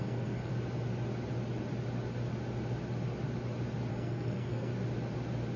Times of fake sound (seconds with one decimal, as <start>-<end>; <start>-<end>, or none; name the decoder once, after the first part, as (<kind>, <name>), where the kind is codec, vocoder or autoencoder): 0.0-0.5 (codec, SNAC); 3.9-4.7